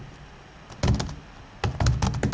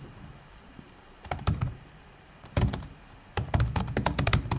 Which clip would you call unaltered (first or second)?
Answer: first